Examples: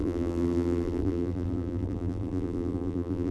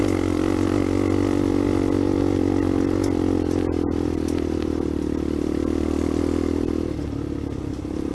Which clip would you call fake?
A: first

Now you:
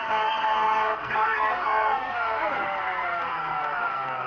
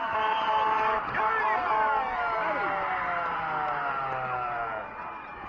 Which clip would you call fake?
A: first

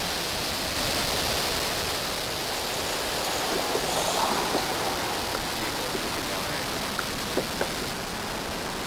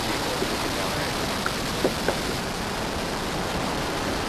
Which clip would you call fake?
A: second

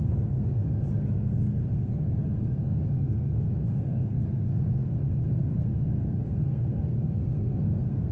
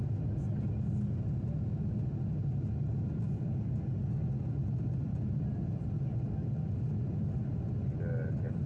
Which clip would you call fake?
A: first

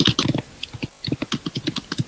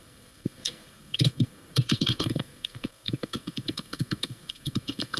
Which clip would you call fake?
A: second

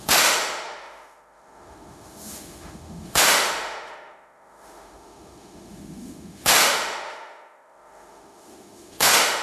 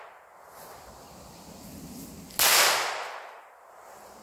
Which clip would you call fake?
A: first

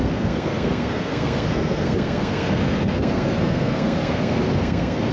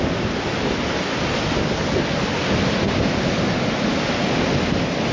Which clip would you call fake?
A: first